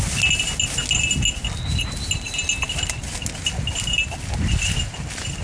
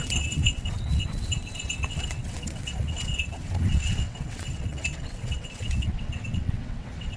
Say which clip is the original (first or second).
first